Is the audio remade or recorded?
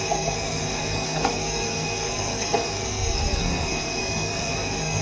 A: remade